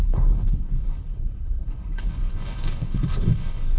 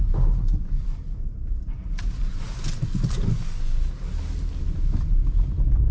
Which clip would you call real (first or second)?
second